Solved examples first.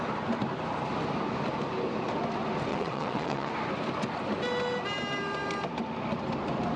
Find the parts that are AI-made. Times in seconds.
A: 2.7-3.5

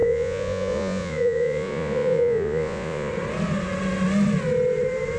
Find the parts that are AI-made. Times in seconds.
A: 0.0-3.1

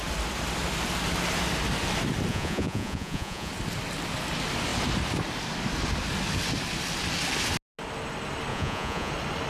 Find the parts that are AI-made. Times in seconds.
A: 2.3-3.5; 8.5-9.1

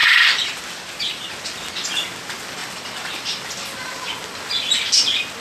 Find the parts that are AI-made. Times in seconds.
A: 0.0-1.2; 2.6-3.9

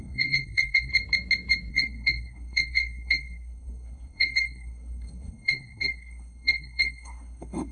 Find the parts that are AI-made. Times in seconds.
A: 0.0-0.9; 1.7-7.7

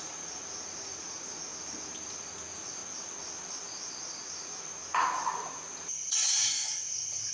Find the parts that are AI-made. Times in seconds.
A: 0.0-1.5; 2.1-2.8; 4.0-7.3

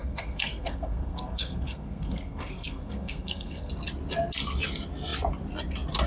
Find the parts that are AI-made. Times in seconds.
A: 0.0-3.7

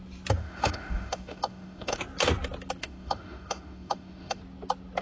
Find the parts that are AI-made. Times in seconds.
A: 0.4-2.0; 2.8-4.4